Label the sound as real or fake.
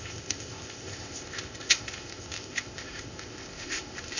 fake